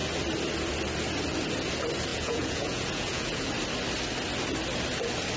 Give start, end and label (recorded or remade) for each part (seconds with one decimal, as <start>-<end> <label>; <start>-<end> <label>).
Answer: 0.0-2.1 recorded; 2.1-3.5 remade; 3.5-5.4 recorded